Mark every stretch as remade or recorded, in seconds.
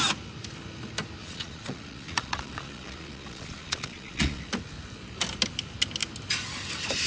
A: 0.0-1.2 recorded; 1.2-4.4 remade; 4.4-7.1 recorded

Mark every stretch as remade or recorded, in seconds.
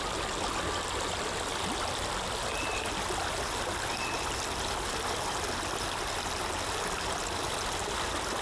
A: 0.0-8.4 recorded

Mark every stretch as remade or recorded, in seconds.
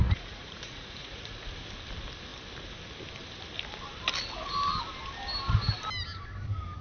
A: 0.0-1.5 remade; 1.5-6.8 recorded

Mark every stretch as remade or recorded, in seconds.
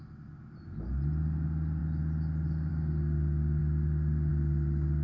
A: 0.0-5.0 recorded